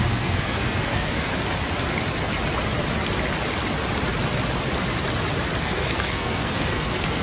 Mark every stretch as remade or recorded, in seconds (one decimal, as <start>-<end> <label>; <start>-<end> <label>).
0.0-1.3 remade; 1.3-5.6 recorded; 5.6-7.2 remade

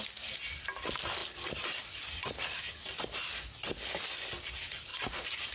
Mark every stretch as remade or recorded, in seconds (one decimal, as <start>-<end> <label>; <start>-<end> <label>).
0.0-5.5 recorded